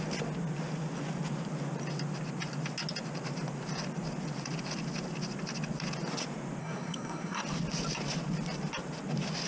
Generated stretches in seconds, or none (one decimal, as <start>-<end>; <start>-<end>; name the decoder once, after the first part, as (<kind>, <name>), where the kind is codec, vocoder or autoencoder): 6.6-7.4 (codec, SNAC)